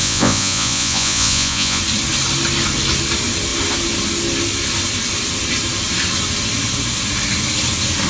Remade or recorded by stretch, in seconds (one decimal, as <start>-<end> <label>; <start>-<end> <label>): 0.0-1.8 remade; 1.8-8.1 recorded